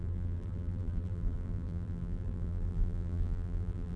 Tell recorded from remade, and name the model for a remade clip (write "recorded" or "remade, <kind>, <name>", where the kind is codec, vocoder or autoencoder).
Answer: remade, vocoder, BigVGAN v2